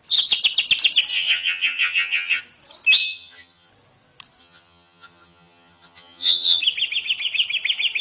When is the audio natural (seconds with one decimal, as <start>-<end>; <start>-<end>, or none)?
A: 0.0-1.1; 2.4-3.0; 3.7-4.4; 6.6-8.0